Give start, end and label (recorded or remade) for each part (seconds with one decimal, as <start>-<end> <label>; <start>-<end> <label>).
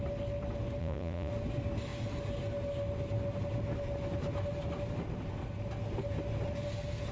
0.0-0.8 recorded; 0.8-1.3 remade; 1.3-7.1 recorded